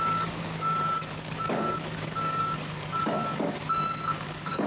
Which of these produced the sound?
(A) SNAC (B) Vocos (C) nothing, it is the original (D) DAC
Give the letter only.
D